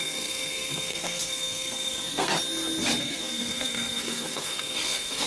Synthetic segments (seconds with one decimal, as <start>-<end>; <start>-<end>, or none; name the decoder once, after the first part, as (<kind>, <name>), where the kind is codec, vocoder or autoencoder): 0.0-2.3 (codec, SNAC); 3.0-5.3